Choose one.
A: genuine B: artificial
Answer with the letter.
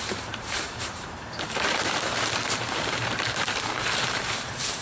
B